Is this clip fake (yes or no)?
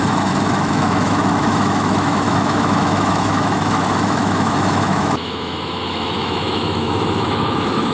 yes